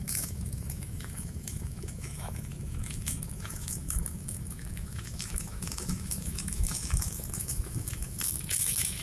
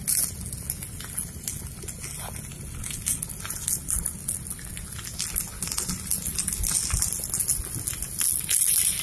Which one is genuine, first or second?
second